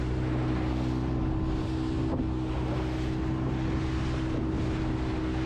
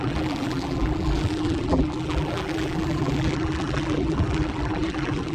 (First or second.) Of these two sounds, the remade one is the second